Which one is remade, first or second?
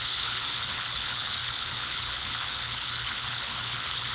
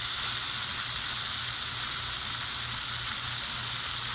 first